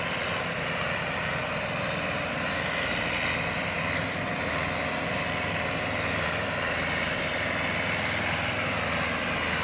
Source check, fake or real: real